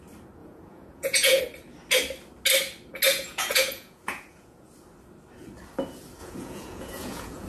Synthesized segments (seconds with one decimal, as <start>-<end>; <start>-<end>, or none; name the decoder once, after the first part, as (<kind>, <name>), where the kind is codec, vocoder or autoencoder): 0.4-1.4 (vocoder, Vocos); 3.1-4.7; 6.2-7.5